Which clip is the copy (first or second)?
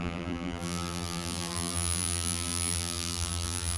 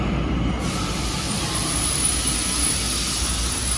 first